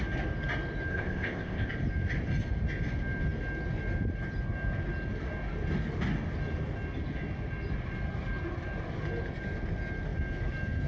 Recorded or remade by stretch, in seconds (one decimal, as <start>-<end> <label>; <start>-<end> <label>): 0.0-0.9 recorded; 0.9-1.7 remade; 1.7-10.9 recorded